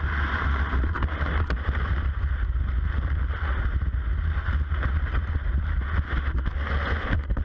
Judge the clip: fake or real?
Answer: real